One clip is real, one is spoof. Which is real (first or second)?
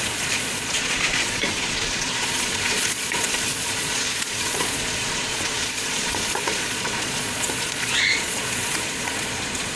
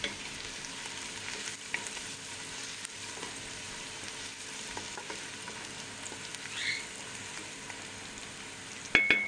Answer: second